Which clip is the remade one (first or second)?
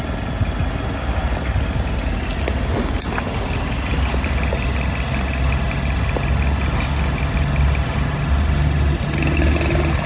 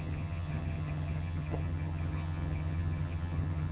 second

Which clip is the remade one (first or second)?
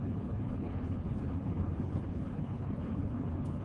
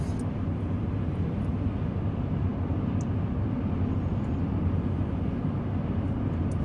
first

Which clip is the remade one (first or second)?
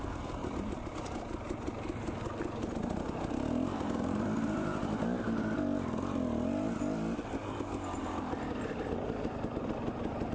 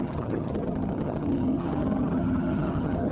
second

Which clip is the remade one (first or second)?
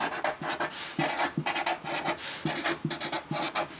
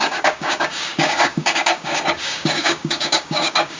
second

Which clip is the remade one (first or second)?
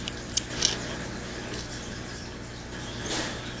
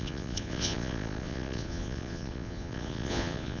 second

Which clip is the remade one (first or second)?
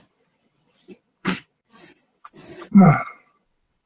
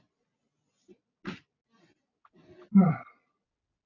first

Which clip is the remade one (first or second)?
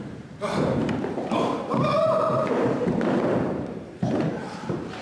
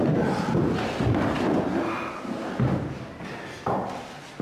first